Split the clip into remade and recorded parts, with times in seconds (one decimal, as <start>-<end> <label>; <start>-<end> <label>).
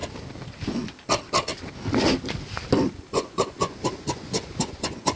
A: 0.0-3.1 recorded; 3.1-5.2 remade